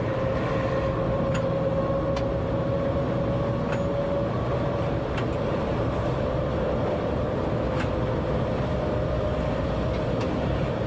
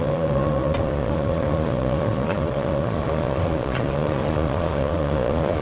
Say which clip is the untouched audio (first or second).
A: first